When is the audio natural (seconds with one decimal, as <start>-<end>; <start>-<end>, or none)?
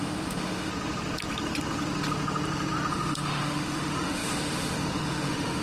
0.7-2.9